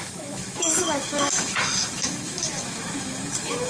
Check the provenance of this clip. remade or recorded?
remade